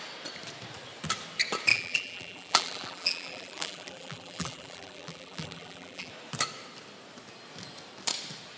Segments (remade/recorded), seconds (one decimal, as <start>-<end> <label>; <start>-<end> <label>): 0.0-1.7 recorded; 1.7-6.1 remade; 6.1-8.6 recorded